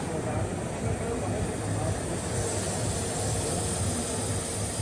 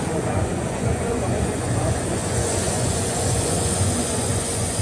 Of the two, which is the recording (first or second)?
first